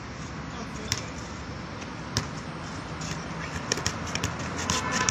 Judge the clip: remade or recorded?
recorded